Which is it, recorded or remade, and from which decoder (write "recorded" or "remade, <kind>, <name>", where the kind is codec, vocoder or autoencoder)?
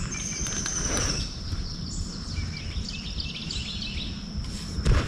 recorded